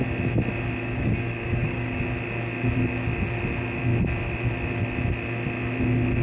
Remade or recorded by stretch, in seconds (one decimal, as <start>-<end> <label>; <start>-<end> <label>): 0.0-0.8 recorded; 0.8-2.0 remade; 2.0-6.2 recorded